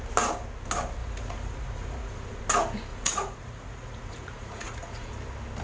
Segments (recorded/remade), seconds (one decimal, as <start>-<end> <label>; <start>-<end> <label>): 0.0-1.0 recorded; 1.0-2.4 remade; 2.4-2.9 recorded; 2.9-5.1 remade; 5.1-5.6 recorded